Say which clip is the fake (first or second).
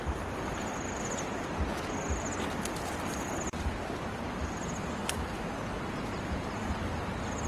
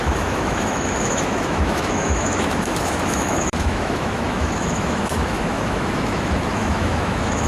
second